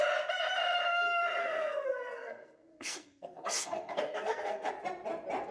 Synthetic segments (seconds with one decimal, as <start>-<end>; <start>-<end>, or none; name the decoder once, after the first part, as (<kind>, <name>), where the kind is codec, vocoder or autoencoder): 1.4-4.7 (codec, SNAC)